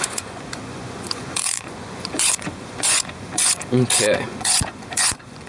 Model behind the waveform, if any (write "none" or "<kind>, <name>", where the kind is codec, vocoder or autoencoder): vocoder, Vocos